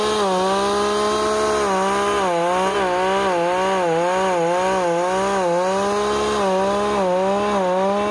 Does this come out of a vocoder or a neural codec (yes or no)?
no